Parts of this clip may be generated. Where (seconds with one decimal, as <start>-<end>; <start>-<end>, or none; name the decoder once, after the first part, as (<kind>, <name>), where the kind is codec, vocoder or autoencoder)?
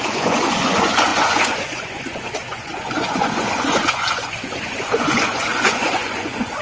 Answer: 0.0-6.6 (vocoder, Vocos)